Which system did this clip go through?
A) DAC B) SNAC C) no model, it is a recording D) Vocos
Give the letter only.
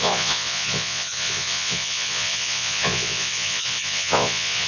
D